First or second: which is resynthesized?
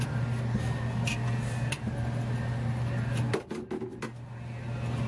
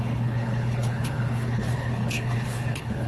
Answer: second